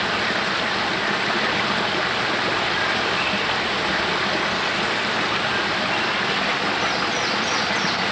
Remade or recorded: remade